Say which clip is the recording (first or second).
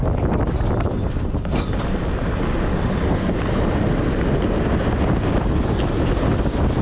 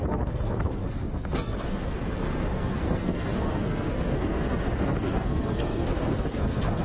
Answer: first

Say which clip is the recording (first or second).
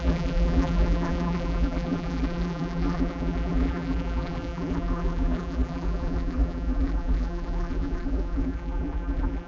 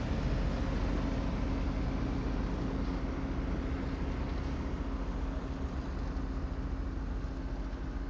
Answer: second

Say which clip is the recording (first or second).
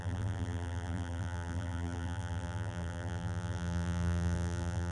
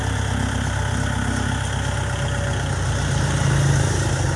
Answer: second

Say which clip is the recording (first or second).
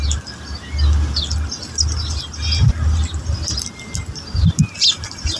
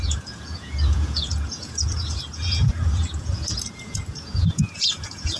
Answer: first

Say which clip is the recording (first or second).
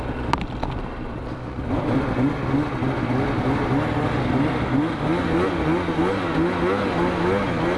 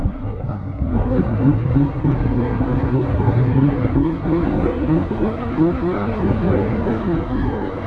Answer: first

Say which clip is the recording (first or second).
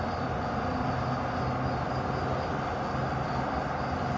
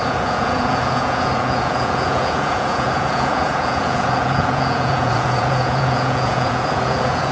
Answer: first